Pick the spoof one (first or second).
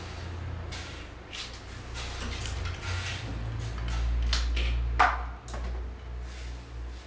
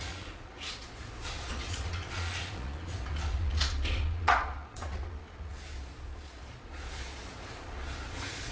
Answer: second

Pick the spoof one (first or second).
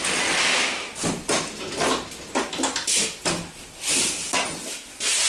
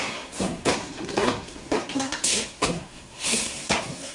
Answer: second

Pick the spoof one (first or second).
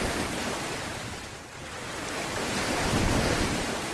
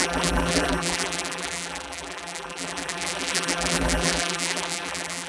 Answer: second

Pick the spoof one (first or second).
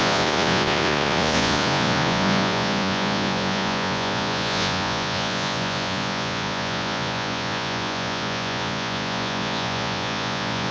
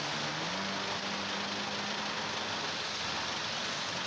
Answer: first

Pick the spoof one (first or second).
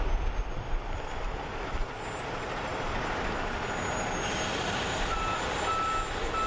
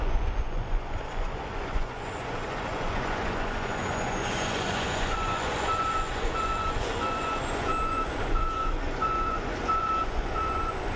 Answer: second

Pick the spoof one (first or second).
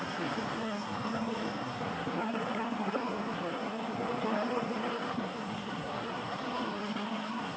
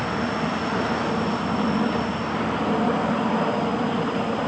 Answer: first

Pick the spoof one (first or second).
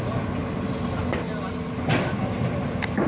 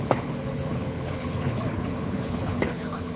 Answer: second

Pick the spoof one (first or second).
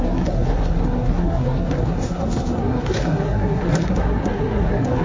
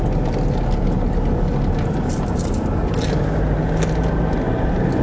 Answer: first